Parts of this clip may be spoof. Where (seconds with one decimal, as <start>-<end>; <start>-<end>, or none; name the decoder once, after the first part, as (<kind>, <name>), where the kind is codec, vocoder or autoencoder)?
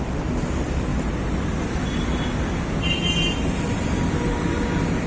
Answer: none